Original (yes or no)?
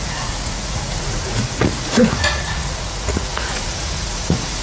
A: no